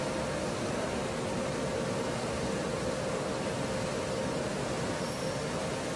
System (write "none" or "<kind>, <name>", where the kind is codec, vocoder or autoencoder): none